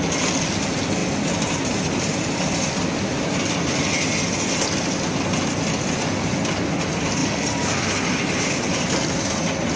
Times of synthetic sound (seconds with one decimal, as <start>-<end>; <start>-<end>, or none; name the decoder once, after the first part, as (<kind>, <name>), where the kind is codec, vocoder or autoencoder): 1.0-2.9 (vocoder, BigVGAN v2); 7.2-9.8